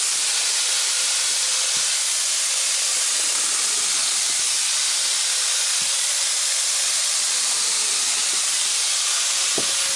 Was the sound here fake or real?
real